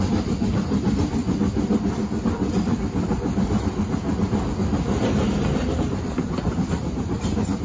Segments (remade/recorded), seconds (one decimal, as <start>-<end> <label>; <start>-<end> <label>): 0.0-7.6 recorded